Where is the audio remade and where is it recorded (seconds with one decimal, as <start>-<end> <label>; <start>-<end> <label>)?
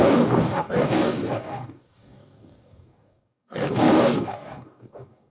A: 0.0-5.3 remade